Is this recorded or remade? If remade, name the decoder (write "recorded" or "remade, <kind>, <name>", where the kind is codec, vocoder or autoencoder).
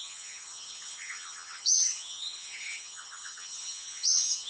remade, vocoder, HiFi-GAN